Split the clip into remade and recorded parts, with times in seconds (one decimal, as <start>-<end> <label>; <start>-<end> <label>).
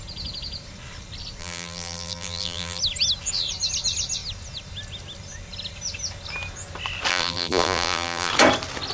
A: 0.0-1.4 recorded; 1.4-2.8 remade; 2.8-7.1 recorded; 7.1-8.3 remade; 8.3-8.9 recorded